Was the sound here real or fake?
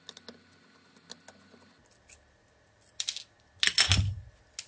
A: real